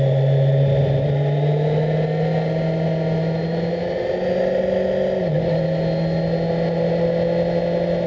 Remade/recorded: recorded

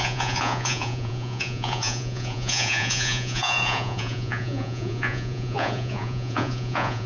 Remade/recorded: remade